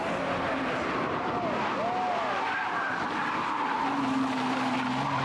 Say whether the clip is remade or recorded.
recorded